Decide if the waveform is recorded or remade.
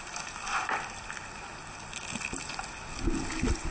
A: recorded